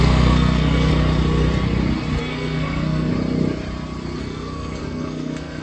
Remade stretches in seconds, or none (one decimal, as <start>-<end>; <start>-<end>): 0.0-0.9; 2.2-3.1; 4.2-5.6